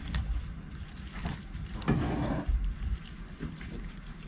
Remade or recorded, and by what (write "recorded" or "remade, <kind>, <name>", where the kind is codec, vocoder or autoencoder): recorded